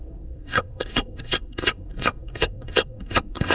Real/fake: fake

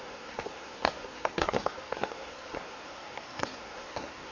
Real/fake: fake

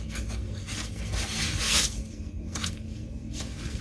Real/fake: fake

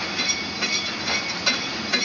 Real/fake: real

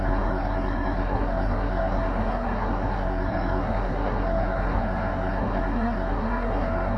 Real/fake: fake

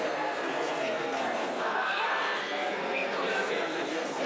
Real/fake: fake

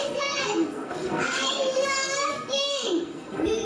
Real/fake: fake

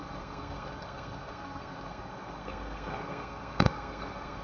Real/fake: fake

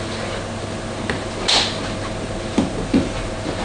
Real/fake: real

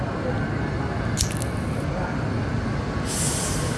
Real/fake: real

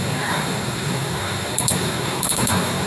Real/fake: fake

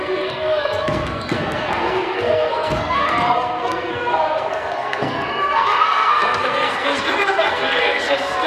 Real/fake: fake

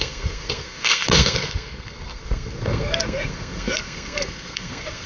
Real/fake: fake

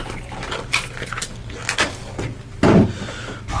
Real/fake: real